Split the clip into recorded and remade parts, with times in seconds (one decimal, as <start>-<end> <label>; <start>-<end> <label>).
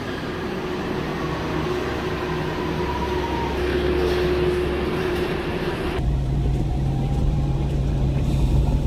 0.0-1.1 remade; 1.1-5.0 recorded; 5.0-8.9 remade